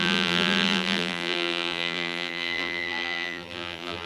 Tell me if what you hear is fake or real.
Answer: fake